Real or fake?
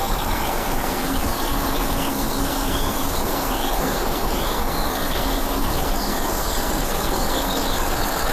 fake